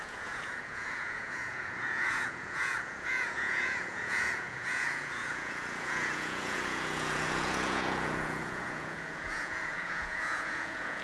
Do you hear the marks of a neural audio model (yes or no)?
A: yes